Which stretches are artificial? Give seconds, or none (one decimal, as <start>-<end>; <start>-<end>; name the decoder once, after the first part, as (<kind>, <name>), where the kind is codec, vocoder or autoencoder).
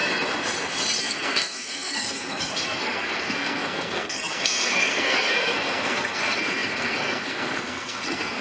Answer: 1.0-8.4 (codec, SNAC)